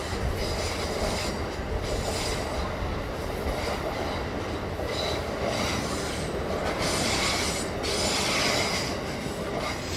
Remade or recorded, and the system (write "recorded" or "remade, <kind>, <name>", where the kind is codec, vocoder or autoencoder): recorded